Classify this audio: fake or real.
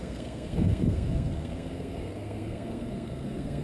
fake